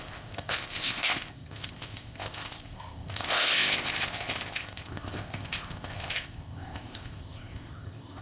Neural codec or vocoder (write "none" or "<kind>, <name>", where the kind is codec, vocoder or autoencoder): codec, ZipCodec